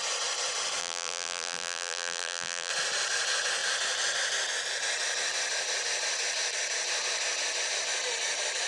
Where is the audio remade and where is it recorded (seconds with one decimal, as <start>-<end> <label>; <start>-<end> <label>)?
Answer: 0.0-0.8 recorded; 0.8-2.7 remade; 2.7-8.7 recorded